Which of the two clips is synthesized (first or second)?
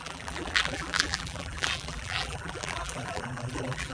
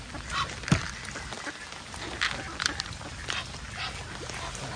first